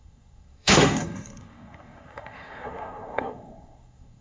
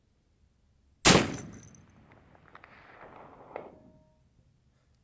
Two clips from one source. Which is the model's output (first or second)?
first